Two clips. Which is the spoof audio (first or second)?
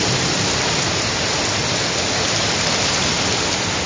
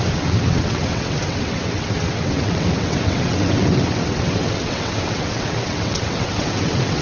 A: second